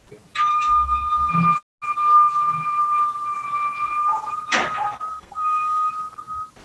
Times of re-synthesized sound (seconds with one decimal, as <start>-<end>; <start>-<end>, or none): 0.5-1.3; 5.1-5.9

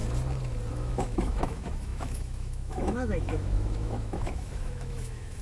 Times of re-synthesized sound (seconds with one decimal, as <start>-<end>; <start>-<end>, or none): 0.7-5.4

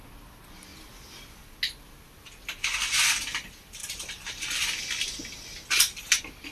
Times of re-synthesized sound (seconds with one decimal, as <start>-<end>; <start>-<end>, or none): none

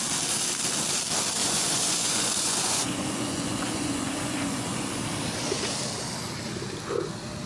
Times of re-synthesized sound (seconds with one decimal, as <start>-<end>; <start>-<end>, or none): 1.4-5.0